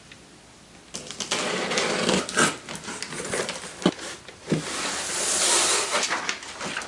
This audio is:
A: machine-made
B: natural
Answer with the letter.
B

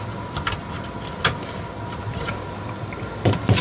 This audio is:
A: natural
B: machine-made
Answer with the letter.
A